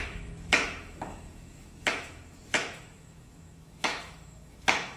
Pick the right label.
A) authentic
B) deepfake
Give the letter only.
B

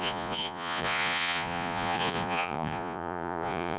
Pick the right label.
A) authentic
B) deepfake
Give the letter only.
B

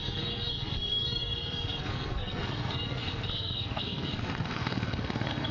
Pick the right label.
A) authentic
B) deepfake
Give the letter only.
B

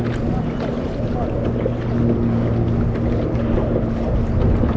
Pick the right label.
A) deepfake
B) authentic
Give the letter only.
B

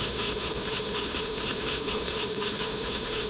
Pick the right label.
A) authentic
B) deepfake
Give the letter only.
B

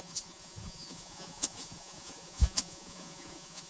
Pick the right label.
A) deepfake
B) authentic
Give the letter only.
A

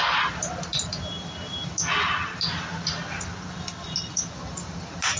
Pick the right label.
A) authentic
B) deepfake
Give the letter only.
A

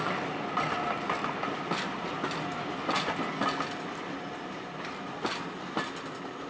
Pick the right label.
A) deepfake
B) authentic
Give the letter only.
B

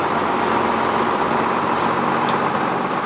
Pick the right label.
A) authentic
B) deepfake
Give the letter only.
B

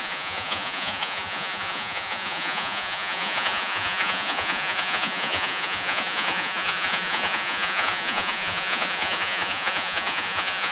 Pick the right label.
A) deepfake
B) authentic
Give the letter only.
A